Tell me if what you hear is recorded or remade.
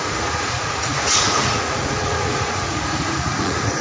remade